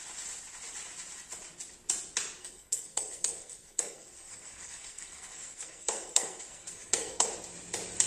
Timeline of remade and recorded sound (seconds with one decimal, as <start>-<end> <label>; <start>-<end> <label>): 0.0-2.4 recorded; 2.4-7.3 remade; 7.3-8.1 recorded